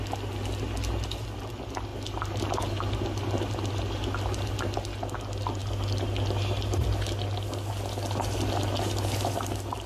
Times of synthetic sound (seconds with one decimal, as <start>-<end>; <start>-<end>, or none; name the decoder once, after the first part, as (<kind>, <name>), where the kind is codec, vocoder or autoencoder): none